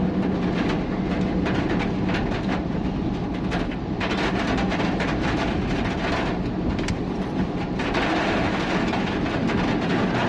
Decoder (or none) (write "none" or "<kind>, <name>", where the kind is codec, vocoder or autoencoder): none